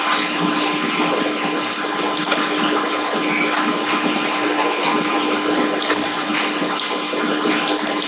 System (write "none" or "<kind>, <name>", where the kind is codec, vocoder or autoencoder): none